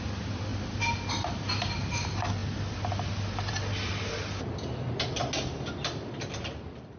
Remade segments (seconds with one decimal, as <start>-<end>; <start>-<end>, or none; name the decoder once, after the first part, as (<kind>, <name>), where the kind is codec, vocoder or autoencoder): none

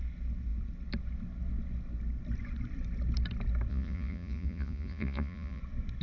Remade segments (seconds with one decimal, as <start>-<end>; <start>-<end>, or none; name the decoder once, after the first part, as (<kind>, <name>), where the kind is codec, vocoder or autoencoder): 3.7-5.6 (vocoder, Vocos)